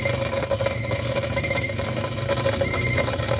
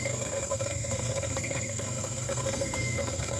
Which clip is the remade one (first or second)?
second